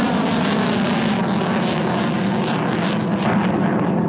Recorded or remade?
recorded